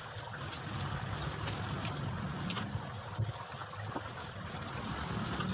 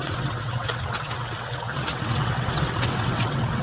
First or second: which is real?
first